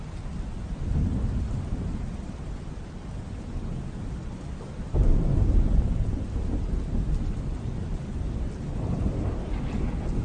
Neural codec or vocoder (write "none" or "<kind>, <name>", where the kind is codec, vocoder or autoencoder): none